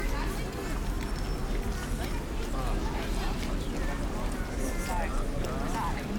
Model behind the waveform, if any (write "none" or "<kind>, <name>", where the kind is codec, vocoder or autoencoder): none